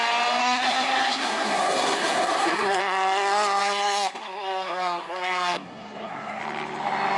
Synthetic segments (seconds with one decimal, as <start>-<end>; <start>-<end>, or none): 0.4-2.8; 3.6-6.4